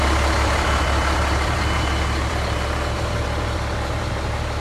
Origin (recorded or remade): remade